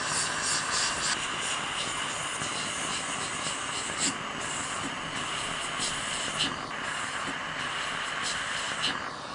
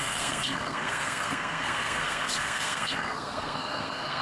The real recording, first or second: first